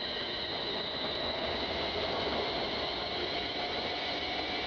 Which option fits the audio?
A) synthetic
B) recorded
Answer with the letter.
A